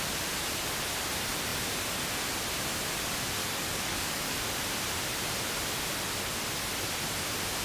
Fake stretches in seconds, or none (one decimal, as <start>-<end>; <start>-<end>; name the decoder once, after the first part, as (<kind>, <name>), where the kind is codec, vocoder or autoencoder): 3.4-4.4 (codec, DAC)